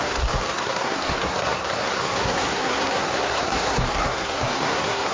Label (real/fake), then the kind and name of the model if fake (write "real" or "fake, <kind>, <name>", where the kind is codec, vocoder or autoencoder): fake, codec, SNAC